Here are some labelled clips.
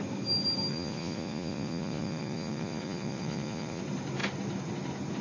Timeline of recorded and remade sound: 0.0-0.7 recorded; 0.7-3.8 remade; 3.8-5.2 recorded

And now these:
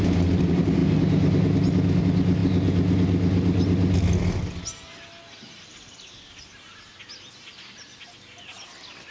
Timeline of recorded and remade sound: 0.0-9.1 recorded

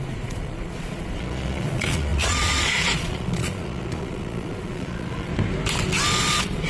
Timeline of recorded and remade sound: 0.0-5.3 remade; 5.3-6.2 recorded; 6.2-6.7 remade

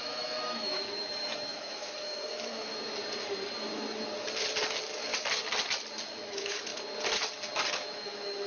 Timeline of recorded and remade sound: 0.0-2.7 remade; 2.7-6.1 recorded; 6.1-6.7 remade; 6.7-7.7 recorded; 7.7-8.5 remade

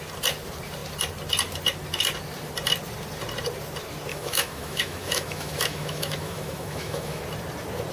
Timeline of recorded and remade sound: 0.0-4.1 recorded; 4.1-7.2 remade; 7.2-7.9 recorded

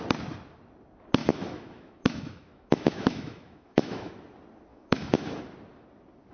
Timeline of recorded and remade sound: 0.0-1.2 recorded; 1.2-4.1 remade; 4.1-4.7 recorded; 4.7-5.4 remade; 5.4-6.3 recorded